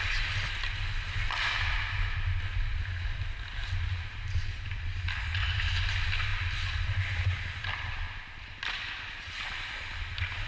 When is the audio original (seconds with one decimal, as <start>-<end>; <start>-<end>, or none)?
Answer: 0.0-3.9; 4.7-10.5

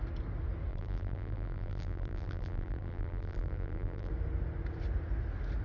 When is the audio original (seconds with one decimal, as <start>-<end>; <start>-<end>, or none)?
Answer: 0.0-0.7; 4.1-5.6